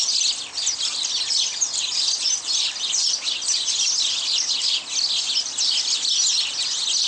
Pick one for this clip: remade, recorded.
recorded